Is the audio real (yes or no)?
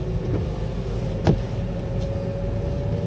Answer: yes